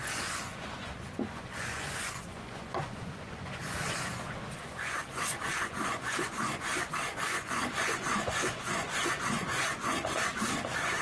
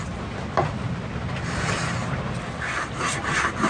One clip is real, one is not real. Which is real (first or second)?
second